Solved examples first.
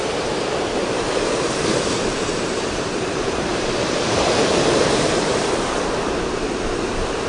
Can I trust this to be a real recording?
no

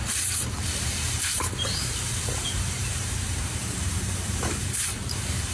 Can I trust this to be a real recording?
no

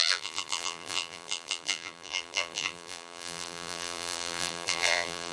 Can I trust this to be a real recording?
no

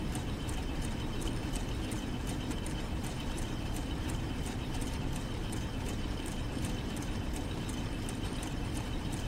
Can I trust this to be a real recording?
no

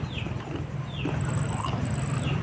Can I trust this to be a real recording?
yes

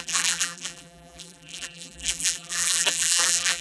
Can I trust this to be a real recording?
no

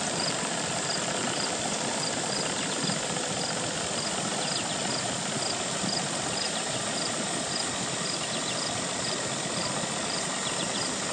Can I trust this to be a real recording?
no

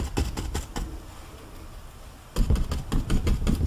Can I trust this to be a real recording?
no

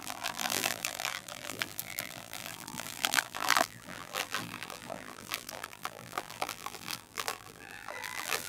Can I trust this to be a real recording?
no